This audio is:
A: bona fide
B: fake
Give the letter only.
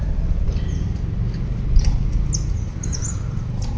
A